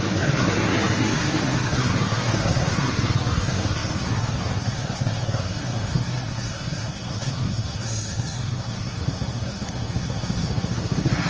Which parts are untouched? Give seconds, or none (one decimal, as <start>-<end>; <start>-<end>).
none